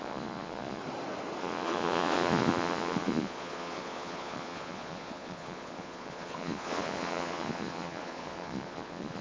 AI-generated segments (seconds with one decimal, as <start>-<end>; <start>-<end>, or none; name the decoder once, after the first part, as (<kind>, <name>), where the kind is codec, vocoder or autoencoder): 0.0-0.8 (vocoder, Vocos); 1.4-9.2